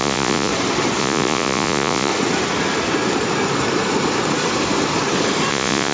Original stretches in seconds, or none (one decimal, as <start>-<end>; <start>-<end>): 0.5-1.0; 2.1-5.5